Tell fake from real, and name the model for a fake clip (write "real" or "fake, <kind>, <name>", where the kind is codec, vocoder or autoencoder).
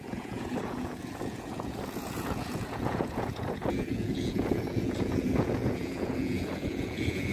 fake, vocoder, Vocos